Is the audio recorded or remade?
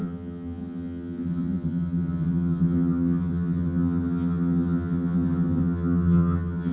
remade